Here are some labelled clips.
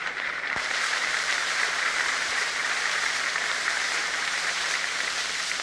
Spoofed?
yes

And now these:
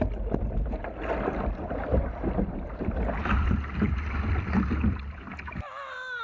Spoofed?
no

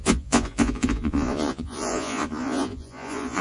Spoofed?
yes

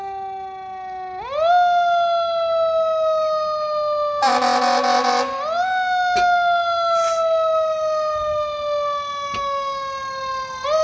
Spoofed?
no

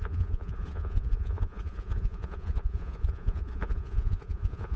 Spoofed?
yes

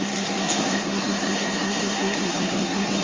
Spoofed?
yes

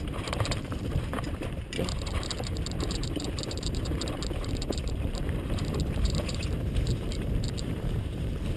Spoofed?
yes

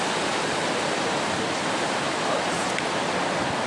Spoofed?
no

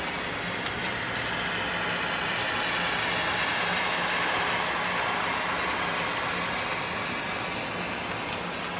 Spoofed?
no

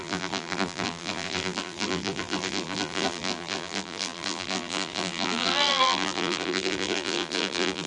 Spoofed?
yes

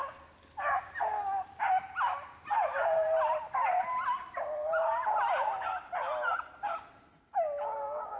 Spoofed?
no